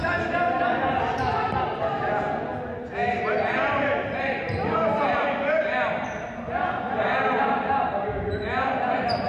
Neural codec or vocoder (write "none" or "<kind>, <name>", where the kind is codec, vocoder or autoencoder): none